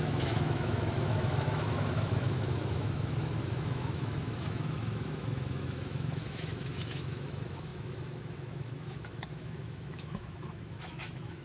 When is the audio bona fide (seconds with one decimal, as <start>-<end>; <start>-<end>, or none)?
none